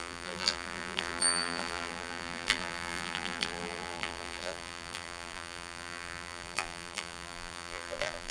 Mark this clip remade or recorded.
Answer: remade